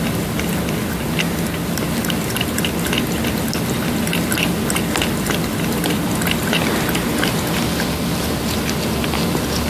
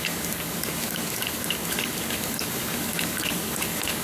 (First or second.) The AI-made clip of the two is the second